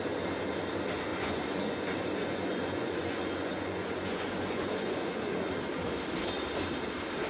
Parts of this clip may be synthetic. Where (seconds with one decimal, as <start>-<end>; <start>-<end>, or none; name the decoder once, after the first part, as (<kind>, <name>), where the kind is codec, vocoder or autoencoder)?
1.1-5.5 (vocoder, Vocos)